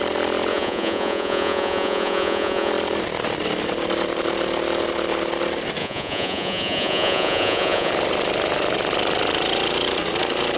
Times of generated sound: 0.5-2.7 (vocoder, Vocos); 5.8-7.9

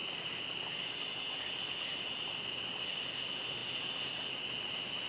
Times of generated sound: none

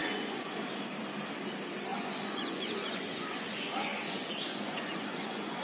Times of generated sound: 0.0-0.6 (vocoder, Vocos); 1.9-5.6